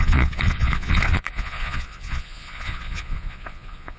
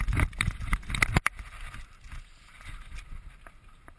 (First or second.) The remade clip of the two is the first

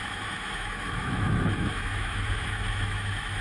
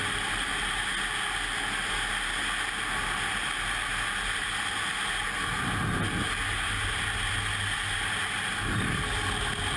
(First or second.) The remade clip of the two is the first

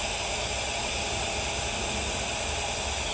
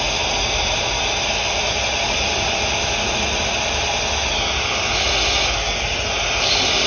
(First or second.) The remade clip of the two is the first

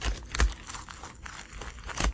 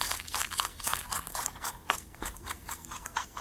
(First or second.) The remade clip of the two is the second